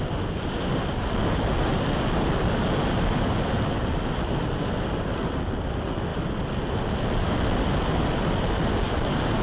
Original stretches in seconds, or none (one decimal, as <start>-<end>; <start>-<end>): 0.0-9.4